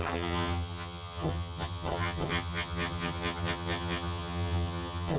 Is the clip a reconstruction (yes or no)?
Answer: yes